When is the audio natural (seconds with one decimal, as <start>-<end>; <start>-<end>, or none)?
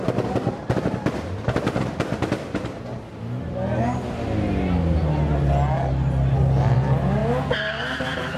0.0-8.4